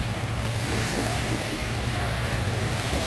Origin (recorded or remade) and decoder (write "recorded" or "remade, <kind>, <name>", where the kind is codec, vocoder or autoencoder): remade, codec, DAC